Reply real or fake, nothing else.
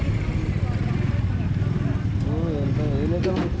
real